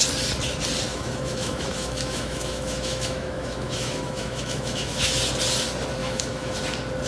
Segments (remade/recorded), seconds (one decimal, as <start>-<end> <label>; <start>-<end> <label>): 0.0-0.9 recorded; 0.9-5.2 remade; 5.2-6.0 recorded; 6.0-6.6 remade; 6.6-7.1 recorded